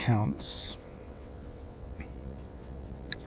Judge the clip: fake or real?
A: fake